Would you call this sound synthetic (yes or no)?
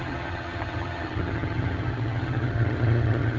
yes